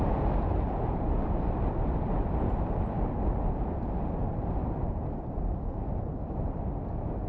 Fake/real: real